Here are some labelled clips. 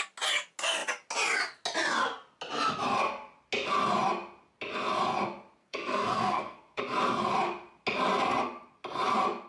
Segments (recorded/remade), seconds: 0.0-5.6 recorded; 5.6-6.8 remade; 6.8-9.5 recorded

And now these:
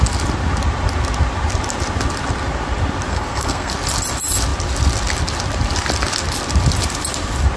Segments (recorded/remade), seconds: 0.0-3.1 recorded; 3.1-3.7 remade; 3.7-7.6 recorded

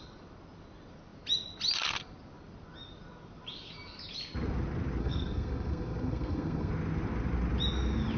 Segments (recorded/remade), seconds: 0.0-5.0 recorded; 5.0-6.7 remade; 6.7-8.2 recorded

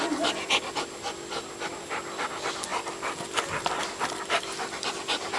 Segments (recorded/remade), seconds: 0.0-5.4 recorded

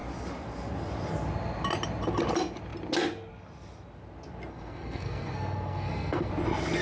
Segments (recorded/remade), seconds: 0.0-4.5 recorded; 4.5-6.3 remade; 6.3-6.8 recorded